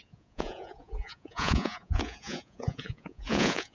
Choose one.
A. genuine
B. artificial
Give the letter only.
B